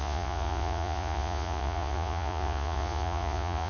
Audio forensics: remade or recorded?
remade